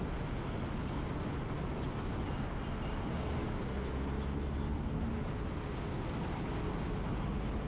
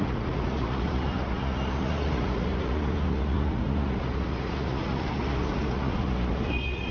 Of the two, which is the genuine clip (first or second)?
first